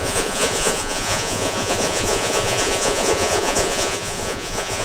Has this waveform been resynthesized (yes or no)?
yes